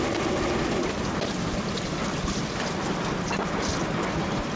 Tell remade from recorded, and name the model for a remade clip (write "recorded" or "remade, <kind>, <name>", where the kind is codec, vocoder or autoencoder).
recorded